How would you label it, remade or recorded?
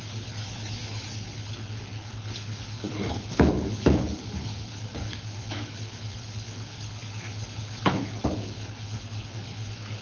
remade